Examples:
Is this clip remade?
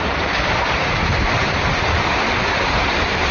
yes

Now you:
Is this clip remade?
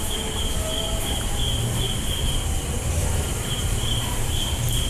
yes